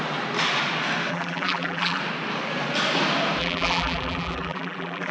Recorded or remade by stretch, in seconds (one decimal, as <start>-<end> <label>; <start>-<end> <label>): 0.0-1.1 recorded; 1.1-2.0 remade; 2.0-3.4 recorded; 3.4-5.1 remade